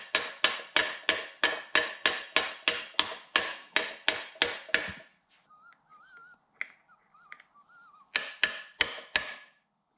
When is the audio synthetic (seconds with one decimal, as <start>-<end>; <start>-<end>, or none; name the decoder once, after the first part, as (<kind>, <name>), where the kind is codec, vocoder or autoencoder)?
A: none